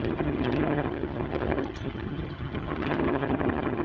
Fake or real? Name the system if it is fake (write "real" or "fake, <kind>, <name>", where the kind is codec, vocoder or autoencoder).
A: fake, vocoder, HiFi-GAN